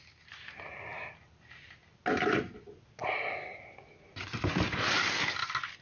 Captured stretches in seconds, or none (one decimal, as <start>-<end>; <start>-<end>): 0.0-5.8